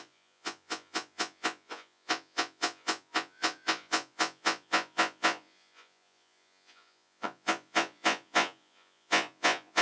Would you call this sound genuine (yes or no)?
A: no